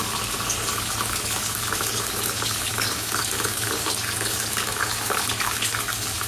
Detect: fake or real fake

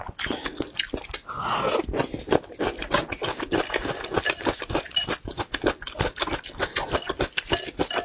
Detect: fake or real real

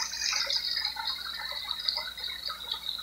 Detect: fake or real real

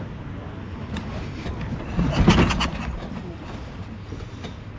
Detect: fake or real real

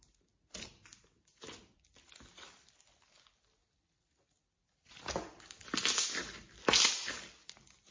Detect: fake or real real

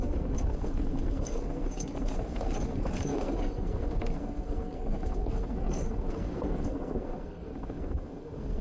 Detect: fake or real fake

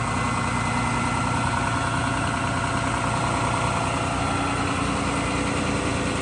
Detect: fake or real real